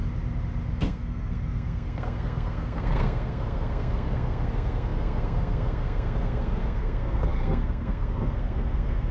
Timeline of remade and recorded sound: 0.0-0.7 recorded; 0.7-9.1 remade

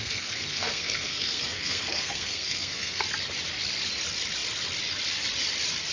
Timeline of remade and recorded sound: 0.0-3.0 remade; 3.0-5.9 recorded

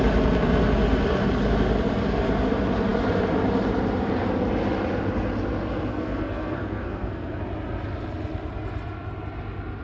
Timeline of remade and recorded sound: 0.0-5.9 recorded; 5.9-7.4 remade; 7.4-9.8 recorded

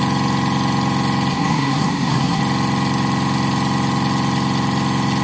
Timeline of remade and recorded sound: 0.0-1.3 recorded; 1.3-2.4 remade; 2.4-5.2 recorded

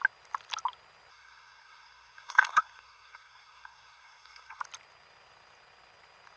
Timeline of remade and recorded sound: 0.0-1.1 recorded; 1.1-4.6 remade; 4.6-6.4 recorded

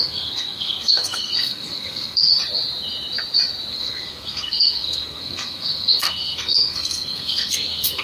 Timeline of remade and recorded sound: 0.0-2.3 remade; 2.3-3.7 recorded; 3.7-8.0 remade

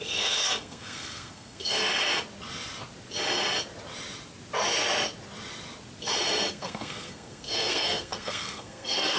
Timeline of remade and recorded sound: 0.0-1.9 remade; 1.9-6.5 recorded; 6.5-9.2 remade